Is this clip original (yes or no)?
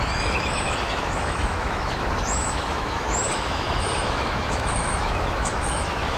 no